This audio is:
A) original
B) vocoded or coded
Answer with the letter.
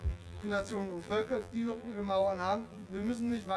B